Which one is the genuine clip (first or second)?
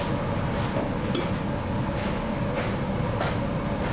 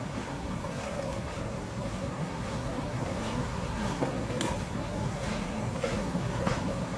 first